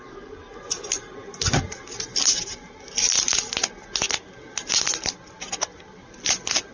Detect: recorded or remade recorded